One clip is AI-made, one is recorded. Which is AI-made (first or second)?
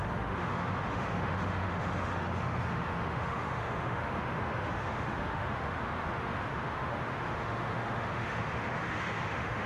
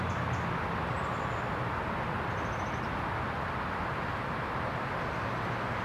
first